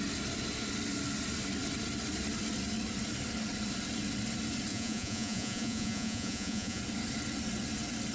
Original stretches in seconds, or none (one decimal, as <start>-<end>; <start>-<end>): 0.0-4.7; 6.8-8.1